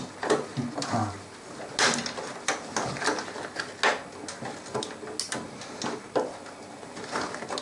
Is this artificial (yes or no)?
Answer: no